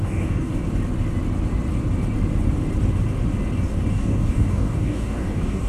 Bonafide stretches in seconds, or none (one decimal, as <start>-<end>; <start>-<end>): 0.5-3.9